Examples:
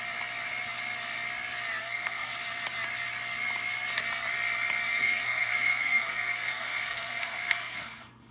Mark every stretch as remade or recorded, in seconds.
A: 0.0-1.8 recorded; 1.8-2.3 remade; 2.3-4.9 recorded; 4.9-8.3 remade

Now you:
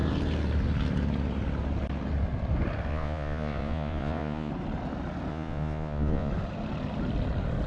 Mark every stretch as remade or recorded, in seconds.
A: 0.0-2.9 recorded; 2.9-4.5 remade; 4.5-5.3 recorded; 5.3-6.3 remade; 6.3-7.7 recorded

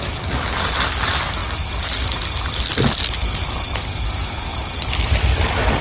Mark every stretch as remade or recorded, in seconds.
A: 0.0-4.5 recorded; 4.5-5.8 remade

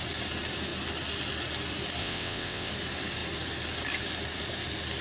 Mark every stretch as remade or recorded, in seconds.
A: 0.0-2.0 recorded; 2.0-2.7 remade; 2.7-5.0 recorded

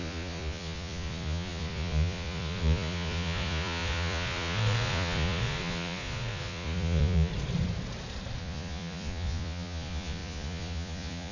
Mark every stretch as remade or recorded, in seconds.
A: 0.0-7.3 remade; 7.3-8.4 recorded; 8.4-11.3 remade

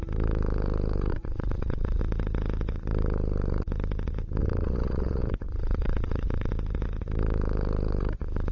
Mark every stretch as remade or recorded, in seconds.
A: 0.0-1.1 recorded; 1.1-2.0 remade; 2.0-4.4 recorded; 4.4-6.5 remade; 6.5-8.5 recorded